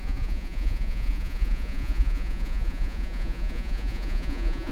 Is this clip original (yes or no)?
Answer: no